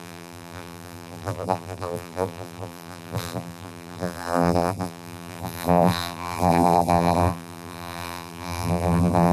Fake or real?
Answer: fake